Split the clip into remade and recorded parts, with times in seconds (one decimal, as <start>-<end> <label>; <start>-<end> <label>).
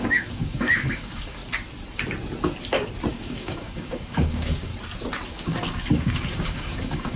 0.0-1.4 remade; 1.4-3.1 recorded; 3.1-4.7 remade; 4.7-5.3 recorded; 5.3-7.2 remade